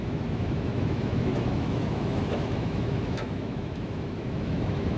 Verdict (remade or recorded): remade